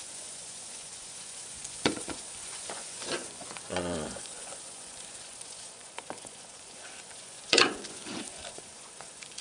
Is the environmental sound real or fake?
fake